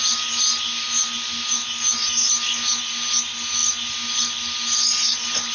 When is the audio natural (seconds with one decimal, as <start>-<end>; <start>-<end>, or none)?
0.0-5.5